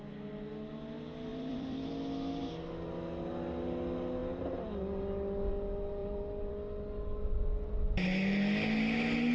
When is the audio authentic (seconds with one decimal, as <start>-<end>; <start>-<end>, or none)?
0.0-1.3; 1.9-6.0; 6.5-9.3